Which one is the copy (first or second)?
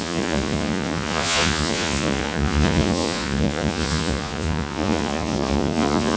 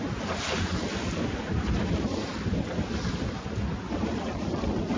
first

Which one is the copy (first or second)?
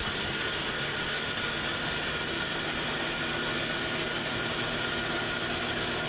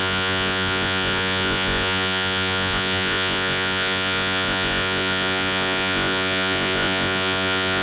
second